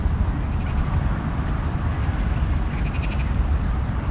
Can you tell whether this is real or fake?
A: real